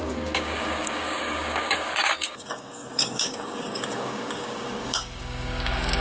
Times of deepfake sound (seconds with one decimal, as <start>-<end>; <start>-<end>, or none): 0.0-6.0